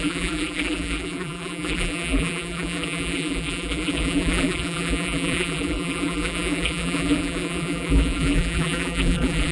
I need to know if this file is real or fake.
fake